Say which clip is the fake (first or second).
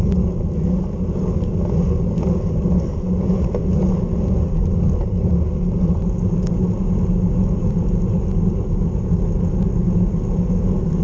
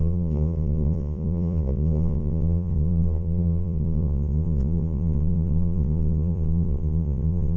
second